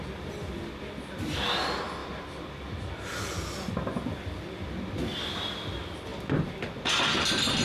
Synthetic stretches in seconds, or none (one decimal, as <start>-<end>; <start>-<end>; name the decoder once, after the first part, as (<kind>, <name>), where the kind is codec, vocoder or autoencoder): none

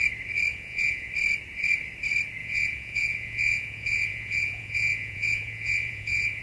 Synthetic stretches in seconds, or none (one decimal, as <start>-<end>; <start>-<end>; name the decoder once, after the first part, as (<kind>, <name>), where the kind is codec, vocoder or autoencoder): 0.5-1.1 (vocoder, Vocos); 2.4-6.4

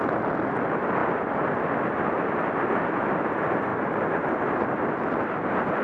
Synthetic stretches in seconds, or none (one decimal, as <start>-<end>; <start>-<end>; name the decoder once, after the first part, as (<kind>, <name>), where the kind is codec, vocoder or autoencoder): none

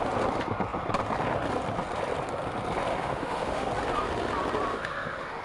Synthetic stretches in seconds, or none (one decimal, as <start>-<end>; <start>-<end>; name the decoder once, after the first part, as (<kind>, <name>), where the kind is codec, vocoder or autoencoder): 2.9-3.7 (autoencoder, DAC-VAE); 4.7-5.4

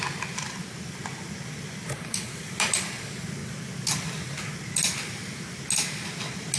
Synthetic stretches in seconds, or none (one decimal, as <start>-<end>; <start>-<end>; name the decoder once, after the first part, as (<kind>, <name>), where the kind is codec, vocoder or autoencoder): 2.1-2.9 (vocoder, BigVGAN v2)

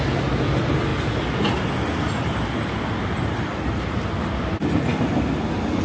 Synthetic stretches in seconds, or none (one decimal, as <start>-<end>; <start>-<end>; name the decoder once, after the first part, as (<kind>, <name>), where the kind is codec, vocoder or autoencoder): none

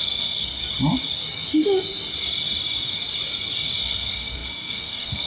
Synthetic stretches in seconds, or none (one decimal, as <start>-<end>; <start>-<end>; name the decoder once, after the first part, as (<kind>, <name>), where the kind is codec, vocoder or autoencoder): 0.0-0.6 (codec, SNAC); 3.8-5.3

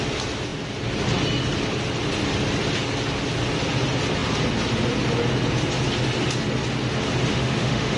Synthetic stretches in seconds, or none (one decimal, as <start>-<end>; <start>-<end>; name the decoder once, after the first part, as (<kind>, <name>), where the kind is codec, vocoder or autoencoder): 7.3-8.0 (autoencoder, DAC-VAE)